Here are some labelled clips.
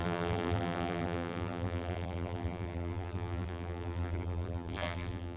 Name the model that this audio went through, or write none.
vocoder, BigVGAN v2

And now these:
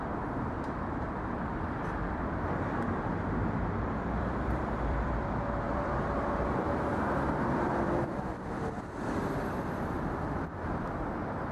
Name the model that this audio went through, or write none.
vocoder, BigVGAN v2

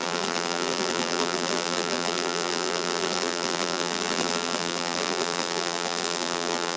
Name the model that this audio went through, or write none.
vocoder, BigVGAN v2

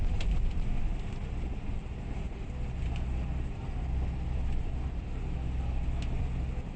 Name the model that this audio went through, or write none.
none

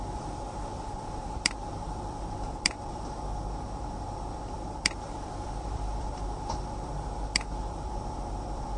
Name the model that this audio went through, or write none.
vocoder, BigVGAN v2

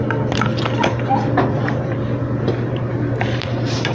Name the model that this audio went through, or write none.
vocoder, BigVGAN v2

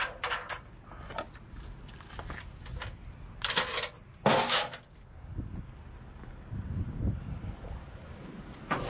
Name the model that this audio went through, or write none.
none